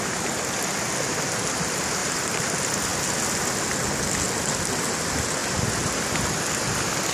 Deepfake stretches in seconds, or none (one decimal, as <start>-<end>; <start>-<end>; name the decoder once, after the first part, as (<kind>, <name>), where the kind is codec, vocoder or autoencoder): 2.0-2.5 (vocoder, BigVGAN v2)